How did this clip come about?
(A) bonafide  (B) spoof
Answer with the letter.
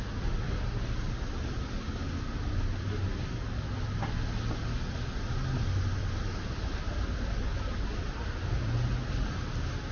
A